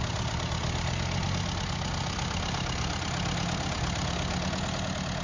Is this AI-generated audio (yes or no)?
no